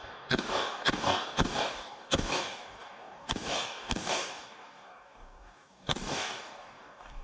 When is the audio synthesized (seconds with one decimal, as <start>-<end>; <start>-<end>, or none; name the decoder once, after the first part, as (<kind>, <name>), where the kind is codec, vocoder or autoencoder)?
0.0-7.2 (codec, DAC)